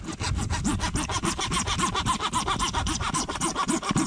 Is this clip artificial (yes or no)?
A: no